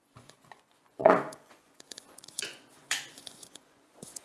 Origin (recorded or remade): remade